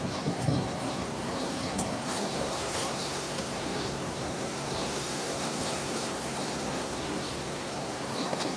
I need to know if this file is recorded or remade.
remade